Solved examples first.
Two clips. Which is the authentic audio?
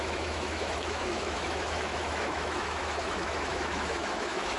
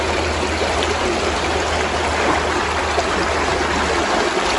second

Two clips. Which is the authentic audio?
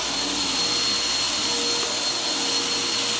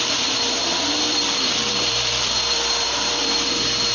first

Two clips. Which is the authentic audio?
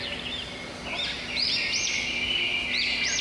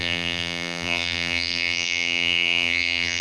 first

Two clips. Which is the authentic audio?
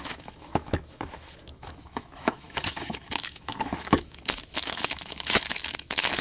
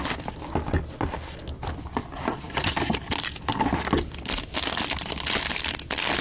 second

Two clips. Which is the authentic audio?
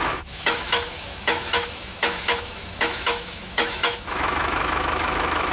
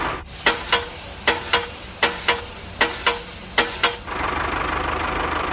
second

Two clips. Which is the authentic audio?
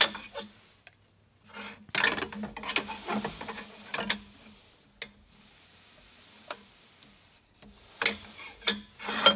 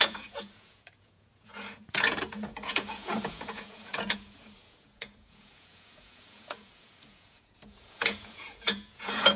first